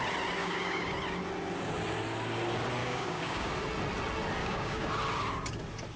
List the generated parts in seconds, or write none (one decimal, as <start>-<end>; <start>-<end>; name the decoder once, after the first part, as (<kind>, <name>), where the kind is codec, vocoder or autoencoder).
0.4-0.9 (codec, DAC); 2.8-3.5; 4.4-4.9